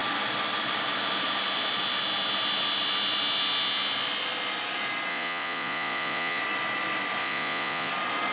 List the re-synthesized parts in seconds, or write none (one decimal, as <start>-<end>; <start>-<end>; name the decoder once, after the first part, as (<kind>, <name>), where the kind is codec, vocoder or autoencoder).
5.1-6.4 (vocoder, Vocos); 7.2-7.9